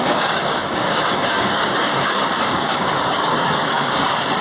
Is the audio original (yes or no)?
no